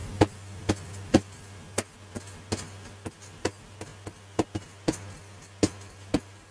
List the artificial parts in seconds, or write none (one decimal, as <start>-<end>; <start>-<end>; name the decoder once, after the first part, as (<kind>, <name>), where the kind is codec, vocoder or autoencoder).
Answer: none